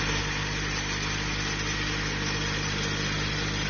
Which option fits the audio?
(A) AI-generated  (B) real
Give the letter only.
B